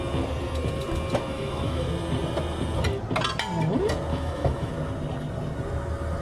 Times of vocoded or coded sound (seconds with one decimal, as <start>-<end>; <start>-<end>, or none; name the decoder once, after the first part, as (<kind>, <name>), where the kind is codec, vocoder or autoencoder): 1.3-1.9 (autoencoder, DAC-VAE); 4.1-4.7